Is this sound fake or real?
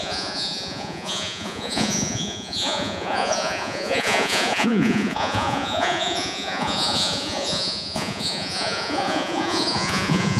fake